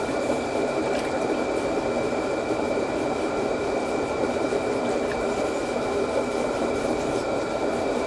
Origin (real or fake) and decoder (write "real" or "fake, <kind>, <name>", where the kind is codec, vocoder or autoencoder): fake, vocoder, BigVGAN v2